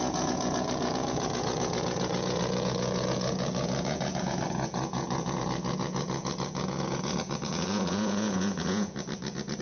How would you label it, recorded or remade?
remade